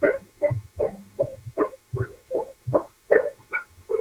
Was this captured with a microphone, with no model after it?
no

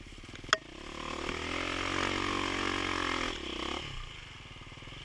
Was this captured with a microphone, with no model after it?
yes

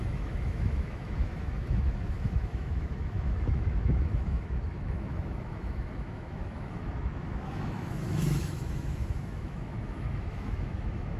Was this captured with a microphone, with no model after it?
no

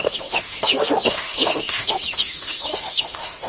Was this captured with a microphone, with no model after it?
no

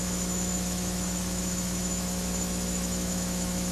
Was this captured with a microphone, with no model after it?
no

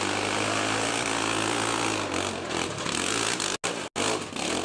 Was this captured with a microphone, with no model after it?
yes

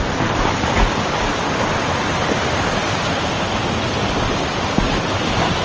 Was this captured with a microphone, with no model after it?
yes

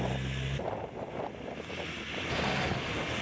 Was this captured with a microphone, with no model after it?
yes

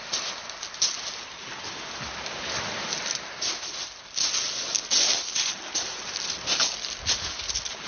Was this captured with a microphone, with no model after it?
yes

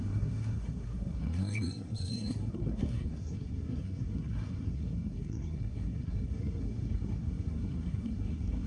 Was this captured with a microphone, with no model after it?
no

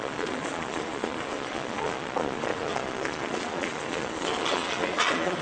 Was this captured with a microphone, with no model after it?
no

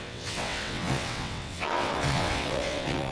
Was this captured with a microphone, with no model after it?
no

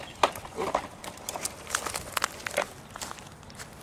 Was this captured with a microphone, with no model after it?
yes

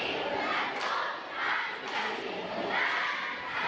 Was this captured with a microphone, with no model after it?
yes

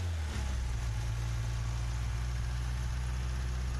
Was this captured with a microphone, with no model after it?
yes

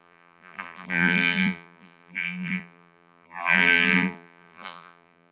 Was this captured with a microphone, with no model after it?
no